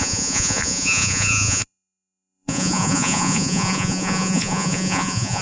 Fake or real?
fake